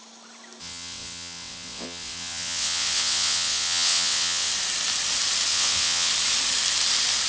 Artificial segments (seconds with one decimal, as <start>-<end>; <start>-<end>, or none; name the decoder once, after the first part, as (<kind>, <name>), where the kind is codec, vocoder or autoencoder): 0.6-4.5 (vocoder, WaveNeXt); 5.5-6.1